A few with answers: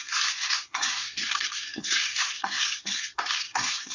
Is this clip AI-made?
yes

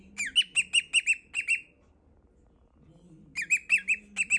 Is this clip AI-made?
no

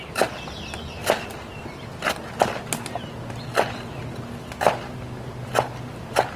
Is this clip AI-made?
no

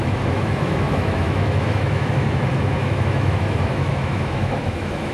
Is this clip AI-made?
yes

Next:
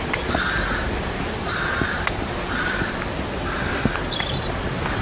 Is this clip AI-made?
no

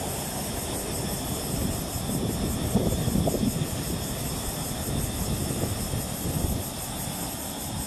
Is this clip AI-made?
no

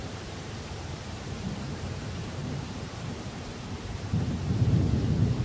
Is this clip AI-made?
yes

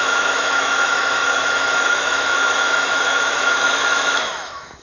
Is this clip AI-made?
yes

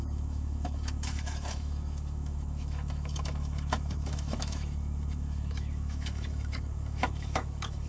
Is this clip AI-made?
yes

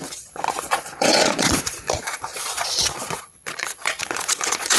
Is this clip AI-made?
yes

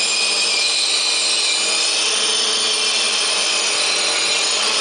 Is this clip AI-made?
no